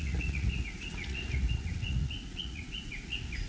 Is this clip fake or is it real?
fake